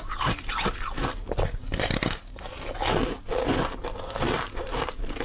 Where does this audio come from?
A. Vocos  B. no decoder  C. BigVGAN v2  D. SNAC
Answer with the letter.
B